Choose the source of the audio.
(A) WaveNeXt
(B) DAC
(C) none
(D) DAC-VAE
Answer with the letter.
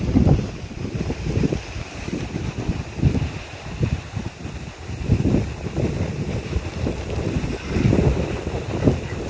C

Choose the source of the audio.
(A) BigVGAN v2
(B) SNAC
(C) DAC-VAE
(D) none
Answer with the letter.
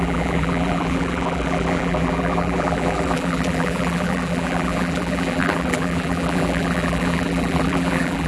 A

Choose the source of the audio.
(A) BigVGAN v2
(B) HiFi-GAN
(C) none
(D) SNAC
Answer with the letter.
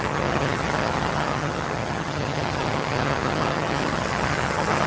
B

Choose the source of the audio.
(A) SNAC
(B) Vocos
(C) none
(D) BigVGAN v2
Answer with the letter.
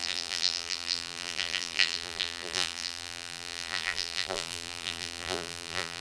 D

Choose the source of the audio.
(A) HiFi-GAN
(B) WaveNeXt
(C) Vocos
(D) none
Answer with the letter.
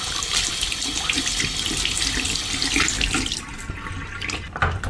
D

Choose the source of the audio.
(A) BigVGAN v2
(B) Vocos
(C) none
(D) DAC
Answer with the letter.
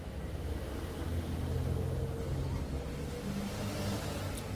C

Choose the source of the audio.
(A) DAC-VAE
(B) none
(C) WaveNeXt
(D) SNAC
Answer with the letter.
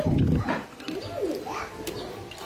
B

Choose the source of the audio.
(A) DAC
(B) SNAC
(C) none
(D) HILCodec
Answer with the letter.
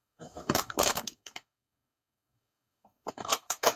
A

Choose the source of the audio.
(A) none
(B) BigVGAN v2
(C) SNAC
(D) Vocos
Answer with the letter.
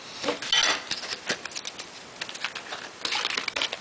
A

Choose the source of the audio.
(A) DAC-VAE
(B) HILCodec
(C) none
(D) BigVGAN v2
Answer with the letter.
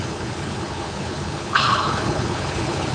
B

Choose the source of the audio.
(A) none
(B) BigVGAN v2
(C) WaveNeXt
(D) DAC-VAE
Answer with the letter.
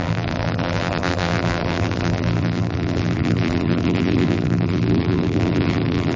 B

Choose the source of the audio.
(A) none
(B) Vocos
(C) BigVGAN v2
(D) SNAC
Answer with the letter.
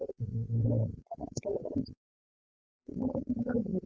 B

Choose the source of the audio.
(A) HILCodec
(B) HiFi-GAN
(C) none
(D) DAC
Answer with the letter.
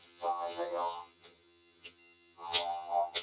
B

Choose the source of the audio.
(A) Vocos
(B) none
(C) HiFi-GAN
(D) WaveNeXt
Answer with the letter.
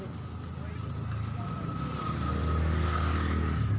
B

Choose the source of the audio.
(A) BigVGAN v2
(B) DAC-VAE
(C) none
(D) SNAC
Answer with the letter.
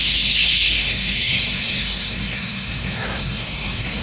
D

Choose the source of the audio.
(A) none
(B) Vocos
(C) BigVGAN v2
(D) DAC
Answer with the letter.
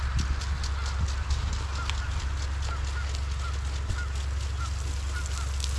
A